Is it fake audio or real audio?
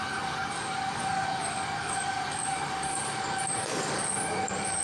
fake